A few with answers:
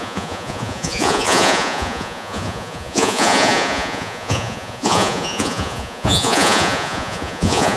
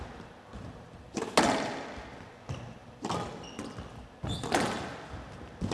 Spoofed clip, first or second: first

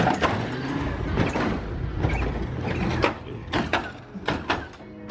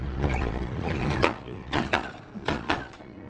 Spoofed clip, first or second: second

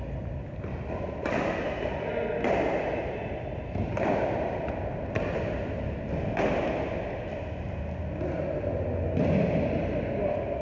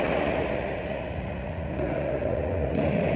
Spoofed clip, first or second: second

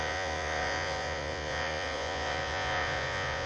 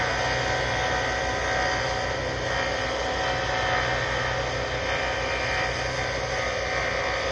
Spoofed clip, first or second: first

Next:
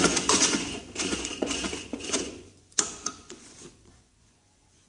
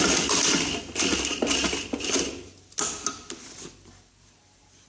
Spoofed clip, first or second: first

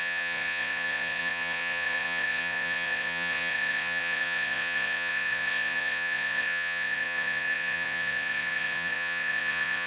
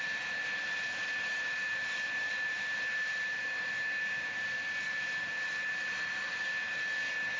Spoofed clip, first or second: first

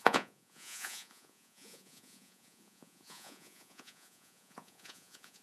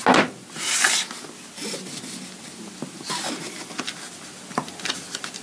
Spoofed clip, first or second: first